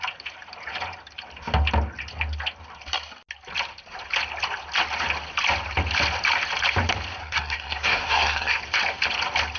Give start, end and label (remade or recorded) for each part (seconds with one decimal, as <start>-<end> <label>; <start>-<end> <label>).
0.0-7.2 recorded; 7.2-8.6 remade; 8.6-9.6 recorded